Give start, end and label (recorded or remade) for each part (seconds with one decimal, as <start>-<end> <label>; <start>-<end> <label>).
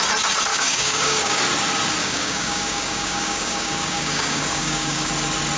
0.0-0.5 recorded; 0.5-1.4 remade; 1.4-2.0 recorded; 2.0-5.1 remade; 5.1-5.6 recorded